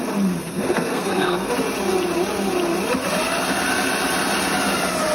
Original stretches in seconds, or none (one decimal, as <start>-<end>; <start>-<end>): 0.0-0.4; 1.5-5.1